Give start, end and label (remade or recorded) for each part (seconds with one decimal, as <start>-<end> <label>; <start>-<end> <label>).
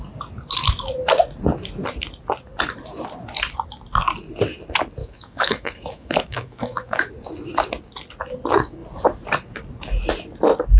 0.0-5.0 recorded; 5.0-7.1 remade; 7.1-10.8 recorded